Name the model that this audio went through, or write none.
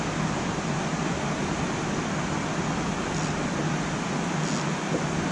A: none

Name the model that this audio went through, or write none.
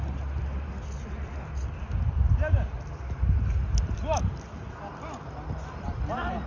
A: none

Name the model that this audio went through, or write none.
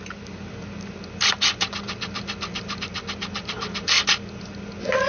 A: none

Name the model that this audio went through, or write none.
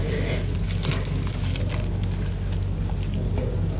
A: none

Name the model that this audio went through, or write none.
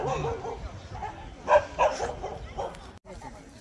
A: none